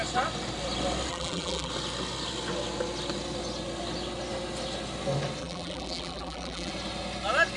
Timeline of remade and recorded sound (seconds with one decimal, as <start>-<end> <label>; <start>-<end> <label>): 0.0-1.1 recorded; 1.1-1.7 remade; 1.7-5.4 recorded; 5.4-6.7 remade; 6.7-7.6 recorded